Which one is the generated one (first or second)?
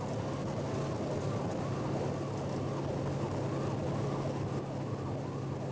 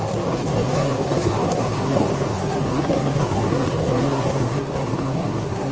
second